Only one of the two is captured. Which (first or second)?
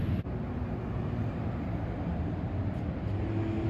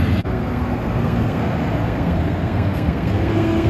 first